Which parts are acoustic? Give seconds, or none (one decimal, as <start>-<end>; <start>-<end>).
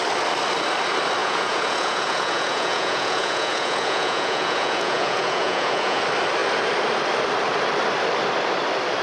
0.0-1.2; 6.0-9.0